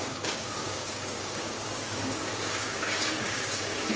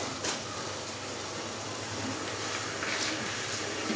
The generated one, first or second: first